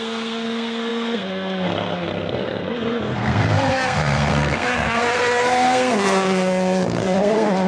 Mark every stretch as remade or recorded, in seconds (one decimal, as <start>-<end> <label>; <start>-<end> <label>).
0.0-7.7 remade

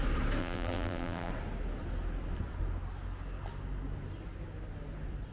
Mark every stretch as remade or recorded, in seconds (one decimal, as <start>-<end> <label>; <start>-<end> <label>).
0.0-0.4 recorded; 0.4-1.3 remade; 1.3-5.3 recorded

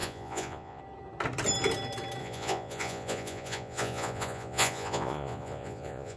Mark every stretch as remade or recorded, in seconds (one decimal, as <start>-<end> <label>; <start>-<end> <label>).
0.0-0.8 remade; 0.8-2.2 recorded; 2.2-6.2 remade

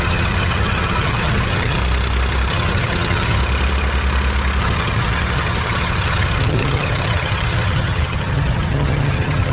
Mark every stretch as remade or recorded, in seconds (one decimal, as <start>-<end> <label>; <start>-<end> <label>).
0.0-1.8 remade; 1.8-2.5 recorded; 2.5-3.4 remade; 3.4-4.6 recorded; 4.6-9.5 remade

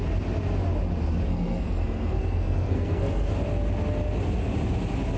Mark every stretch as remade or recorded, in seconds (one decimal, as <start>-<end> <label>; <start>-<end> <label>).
0.0-1.3 recorded; 1.3-3.3 remade; 3.3-5.2 recorded

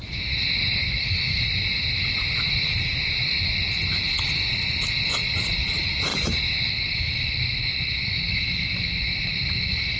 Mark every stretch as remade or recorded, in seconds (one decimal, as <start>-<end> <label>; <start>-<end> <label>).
0.0-6.1 recorded; 6.1-7.1 remade; 7.1-9.1 recorded; 9.1-10.0 remade